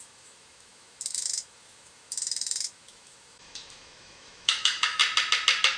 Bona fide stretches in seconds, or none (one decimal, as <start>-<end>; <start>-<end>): 5.0-5.8